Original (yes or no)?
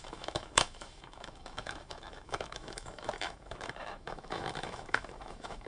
no